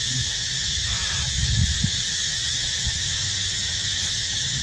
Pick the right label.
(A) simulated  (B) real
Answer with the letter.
A